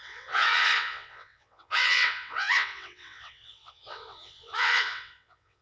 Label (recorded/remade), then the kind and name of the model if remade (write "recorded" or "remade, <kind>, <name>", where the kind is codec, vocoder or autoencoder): remade, vocoder, WaveNeXt